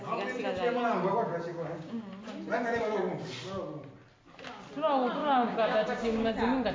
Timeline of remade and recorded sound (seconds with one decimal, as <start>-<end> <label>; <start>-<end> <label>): 0.0-1.5 recorded; 1.5-2.1 remade; 2.1-5.2 recorded; 5.2-6.3 remade; 6.3-6.7 recorded